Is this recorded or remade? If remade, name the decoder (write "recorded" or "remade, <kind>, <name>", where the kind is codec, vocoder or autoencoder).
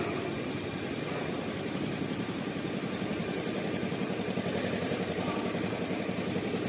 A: remade, vocoder, BigVGAN v2